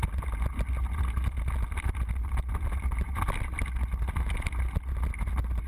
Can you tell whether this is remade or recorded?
recorded